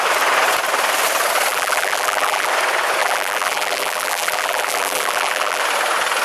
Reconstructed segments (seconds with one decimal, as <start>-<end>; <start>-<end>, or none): 1.5-2.5; 3.0-5.6